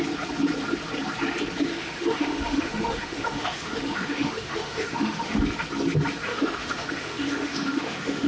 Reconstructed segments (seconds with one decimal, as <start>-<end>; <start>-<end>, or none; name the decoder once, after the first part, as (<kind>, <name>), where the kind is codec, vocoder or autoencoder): 1.7-5.4 (autoencoder, DAC-VAE); 6.3-8.3